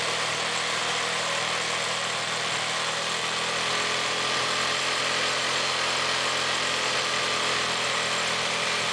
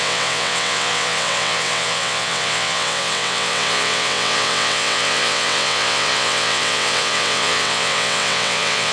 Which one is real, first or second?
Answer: first